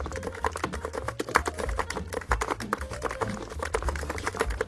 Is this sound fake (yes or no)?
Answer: yes